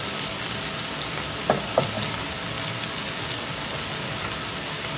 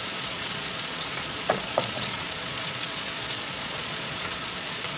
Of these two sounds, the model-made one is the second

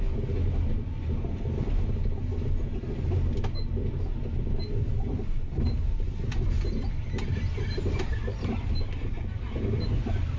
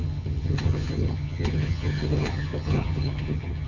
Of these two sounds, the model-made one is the second